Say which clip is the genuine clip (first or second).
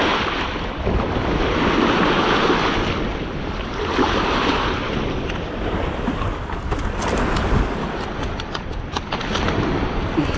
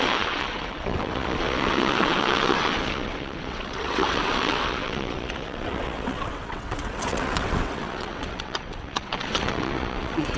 first